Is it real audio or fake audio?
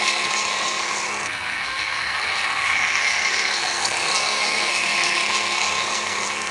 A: fake